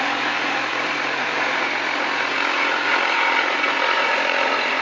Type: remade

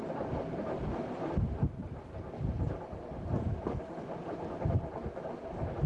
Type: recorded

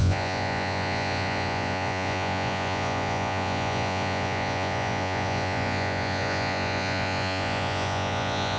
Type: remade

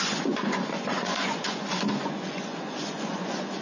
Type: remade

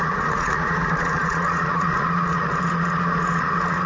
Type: remade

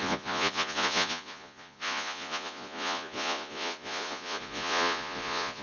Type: remade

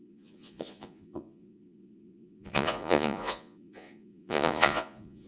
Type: remade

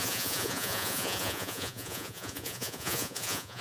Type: remade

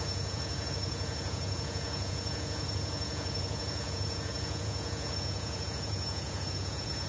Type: remade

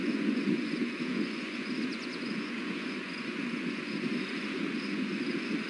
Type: remade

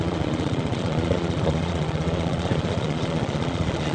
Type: remade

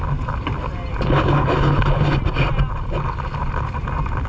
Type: recorded